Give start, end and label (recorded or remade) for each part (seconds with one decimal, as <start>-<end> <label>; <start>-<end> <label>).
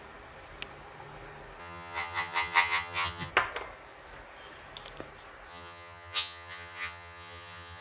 0.0-1.6 recorded; 1.6-3.3 remade; 3.3-5.5 recorded; 5.5-7.8 remade